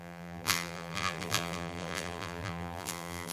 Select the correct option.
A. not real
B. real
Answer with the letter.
A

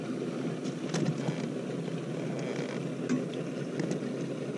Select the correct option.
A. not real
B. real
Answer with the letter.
B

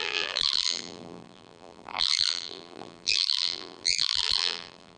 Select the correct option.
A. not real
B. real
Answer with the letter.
A